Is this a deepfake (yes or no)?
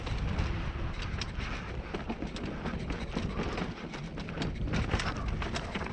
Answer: no